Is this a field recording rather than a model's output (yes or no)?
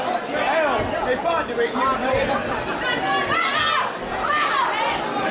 yes